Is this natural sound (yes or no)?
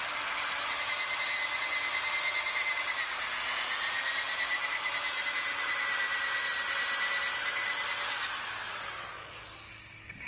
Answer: yes